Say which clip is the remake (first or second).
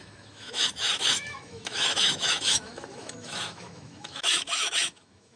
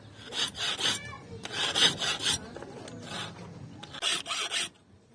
first